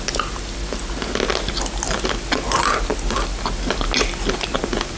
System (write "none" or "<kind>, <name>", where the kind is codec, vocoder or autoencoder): none